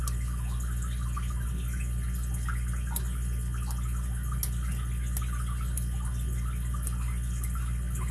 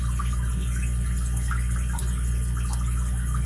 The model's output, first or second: second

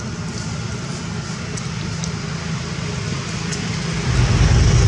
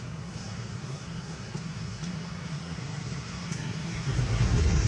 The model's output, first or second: second